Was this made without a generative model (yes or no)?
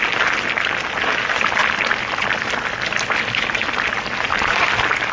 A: yes